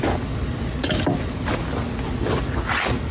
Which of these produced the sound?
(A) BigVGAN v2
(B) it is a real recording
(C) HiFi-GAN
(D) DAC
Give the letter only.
B